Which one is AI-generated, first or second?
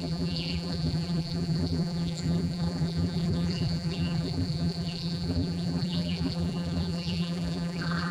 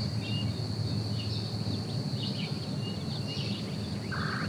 first